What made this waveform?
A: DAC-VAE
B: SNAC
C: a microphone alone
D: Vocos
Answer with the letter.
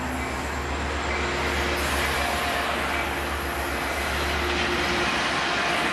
C